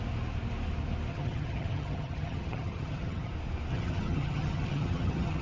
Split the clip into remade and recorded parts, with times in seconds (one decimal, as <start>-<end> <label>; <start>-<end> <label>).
0.0-1.1 recorded; 1.1-3.3 remade; 3.3-3.7 recorded; 3.7-5.4 remade